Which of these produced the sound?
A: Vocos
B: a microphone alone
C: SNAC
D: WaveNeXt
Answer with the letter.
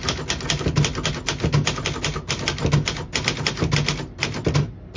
B